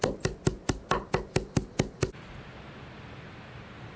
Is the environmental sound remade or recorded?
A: recorded